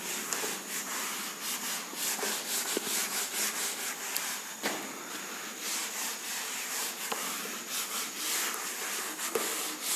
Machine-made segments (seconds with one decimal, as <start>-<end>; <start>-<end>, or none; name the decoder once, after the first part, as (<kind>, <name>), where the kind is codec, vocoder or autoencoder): 5.8-9.0 (vocoder, BigVGAN v2)

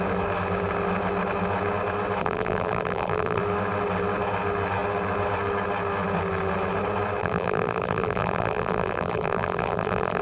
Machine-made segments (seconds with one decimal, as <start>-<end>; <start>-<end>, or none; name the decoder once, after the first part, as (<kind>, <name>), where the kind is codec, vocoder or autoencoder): 2.2-3.4 (vocoder, BigVGAN v2); 7.2-10.2